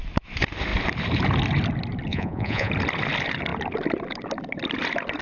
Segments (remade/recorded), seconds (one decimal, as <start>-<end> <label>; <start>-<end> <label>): 0.0-2.1 recorded; 2.1-2.7 remade; 2.7-5.2 recorded